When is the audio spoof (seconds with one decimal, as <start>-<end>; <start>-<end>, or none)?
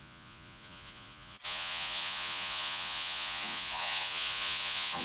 0.0-5.0